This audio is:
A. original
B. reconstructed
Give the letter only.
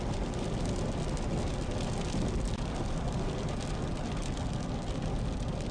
A